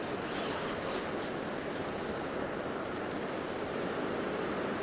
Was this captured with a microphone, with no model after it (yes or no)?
yes